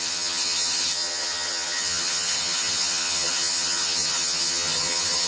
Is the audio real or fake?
fake